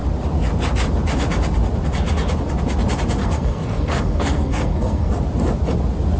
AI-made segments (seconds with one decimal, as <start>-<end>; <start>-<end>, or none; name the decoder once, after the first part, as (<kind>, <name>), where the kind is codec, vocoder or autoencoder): 3.2-5.1 (codec, SNAC)